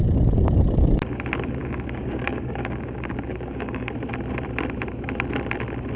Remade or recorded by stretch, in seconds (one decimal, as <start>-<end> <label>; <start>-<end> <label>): 0.0-1.6 recorded; 1.6-3.9 remade; 3.9-6.0 recorded